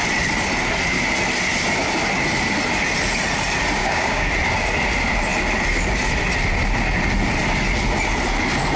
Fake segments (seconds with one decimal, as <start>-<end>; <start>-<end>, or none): 3.8-4.3

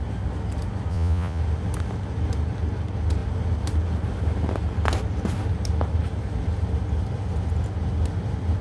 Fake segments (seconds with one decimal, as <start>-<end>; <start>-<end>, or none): 0.9-1.4

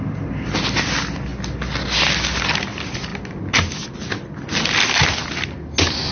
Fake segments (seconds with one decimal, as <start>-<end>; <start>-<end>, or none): none

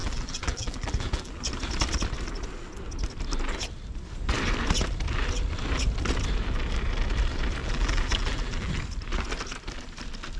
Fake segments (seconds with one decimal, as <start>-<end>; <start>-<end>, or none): 0.0-1.3; 7.6-8.7

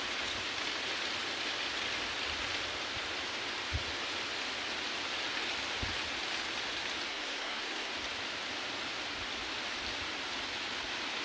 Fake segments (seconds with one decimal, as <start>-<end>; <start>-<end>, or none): 7.1-7.9

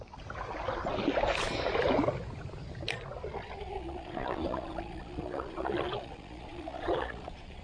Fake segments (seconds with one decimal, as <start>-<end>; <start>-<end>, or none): 3.3-7.6